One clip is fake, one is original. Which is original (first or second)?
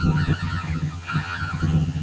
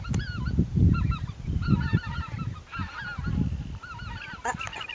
second